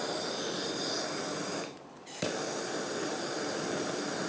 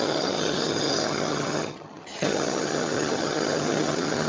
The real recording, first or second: first